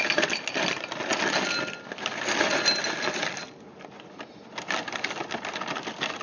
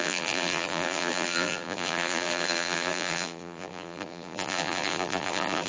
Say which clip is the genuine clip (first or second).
first